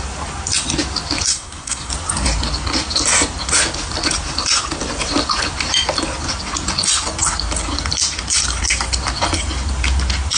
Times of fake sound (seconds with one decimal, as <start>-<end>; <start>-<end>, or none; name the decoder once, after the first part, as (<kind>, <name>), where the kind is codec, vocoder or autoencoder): 1.3-1.9 (codec, SNAC)